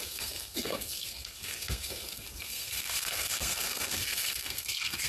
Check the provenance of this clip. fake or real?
fake